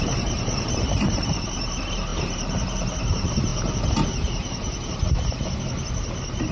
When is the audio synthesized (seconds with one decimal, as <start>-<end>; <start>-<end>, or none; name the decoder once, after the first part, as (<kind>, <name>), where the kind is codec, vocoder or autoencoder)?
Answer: 0.0-3.5 (vocoder, BigVGAN v2)